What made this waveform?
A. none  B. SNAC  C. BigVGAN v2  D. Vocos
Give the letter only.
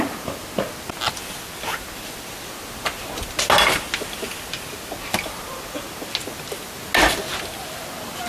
A